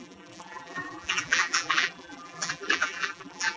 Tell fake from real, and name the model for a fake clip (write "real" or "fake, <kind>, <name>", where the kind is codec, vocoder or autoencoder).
fake, vocoder, BigVGAN v2